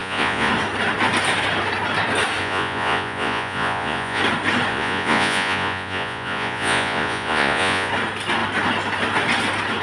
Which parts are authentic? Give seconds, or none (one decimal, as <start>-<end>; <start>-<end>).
0.5-2.4; 4.2-4.7; 7.9-9.8